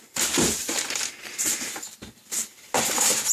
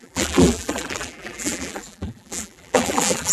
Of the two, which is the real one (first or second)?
first